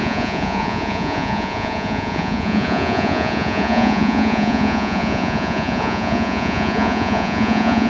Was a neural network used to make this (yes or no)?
yes